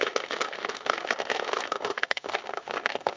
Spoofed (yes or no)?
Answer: yes